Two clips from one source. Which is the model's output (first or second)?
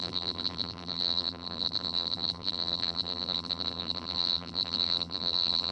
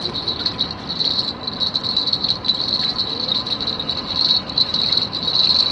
first